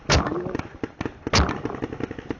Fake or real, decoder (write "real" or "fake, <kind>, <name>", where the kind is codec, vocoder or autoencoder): real